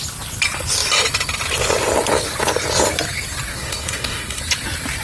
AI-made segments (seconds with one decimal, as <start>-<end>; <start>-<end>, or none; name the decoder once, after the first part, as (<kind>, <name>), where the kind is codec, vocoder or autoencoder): 3.5-4.4 (codec, DAC)